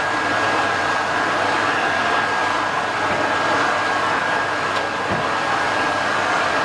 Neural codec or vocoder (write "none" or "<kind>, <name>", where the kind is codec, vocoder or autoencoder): vocoder, BigVGAN v2